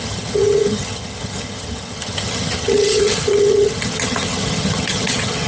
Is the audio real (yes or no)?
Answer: no